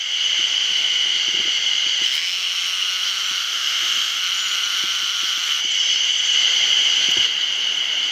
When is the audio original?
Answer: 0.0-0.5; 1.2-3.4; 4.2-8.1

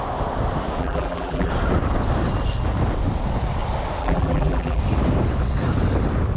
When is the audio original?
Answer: 0.0-0.8; 1.5-4.0; 4.8-6.4

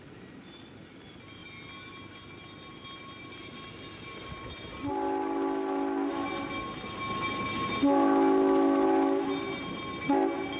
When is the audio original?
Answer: 0.0-10.6

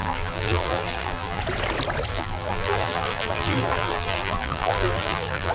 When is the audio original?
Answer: 1.4-2.1

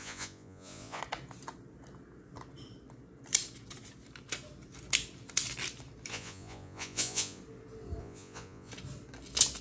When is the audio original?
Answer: 1.0-6.1; 7.4-8.0; 8.7-9.6